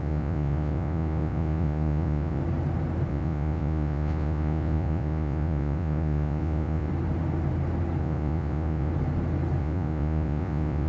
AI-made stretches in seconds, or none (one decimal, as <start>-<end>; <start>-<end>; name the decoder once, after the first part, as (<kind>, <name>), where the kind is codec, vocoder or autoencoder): 0.0-2.4 (vocoder, Vocos); 3.1-6.9; 8.0-8.9; 9.6-10.9